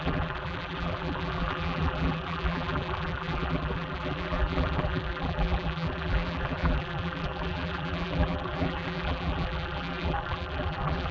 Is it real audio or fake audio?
fake